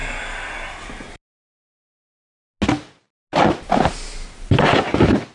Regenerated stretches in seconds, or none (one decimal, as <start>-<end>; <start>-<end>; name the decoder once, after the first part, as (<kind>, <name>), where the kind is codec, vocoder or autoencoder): none